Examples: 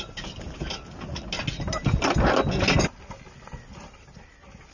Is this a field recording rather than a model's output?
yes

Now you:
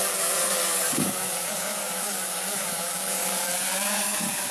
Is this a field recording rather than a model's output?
no